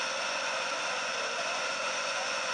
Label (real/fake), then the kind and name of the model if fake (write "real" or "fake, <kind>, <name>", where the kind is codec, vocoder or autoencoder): fake, vocoder, Vocos